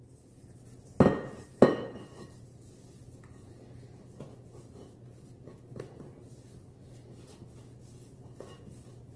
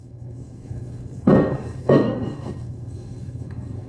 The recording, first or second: first